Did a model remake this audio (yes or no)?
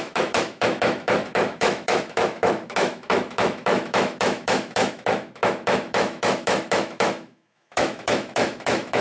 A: yes